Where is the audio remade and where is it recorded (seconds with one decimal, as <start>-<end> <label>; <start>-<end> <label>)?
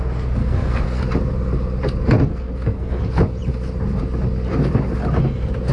0.0-0.4 recorded; 0.4-1.0 remade; 1.0-2.3 recorded; 2.3-3.0 remade; 3.0-5.7 recorded